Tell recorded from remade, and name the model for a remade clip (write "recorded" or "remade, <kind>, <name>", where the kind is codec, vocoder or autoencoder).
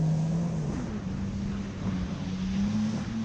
recorded